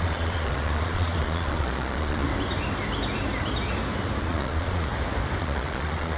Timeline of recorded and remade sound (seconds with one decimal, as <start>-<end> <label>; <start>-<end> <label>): 0.0-2.3 remade; 2.3-4.2 recorded; 4.2-4.9 remade; 4.9-5.4 recorded; 5.4-6.2 remade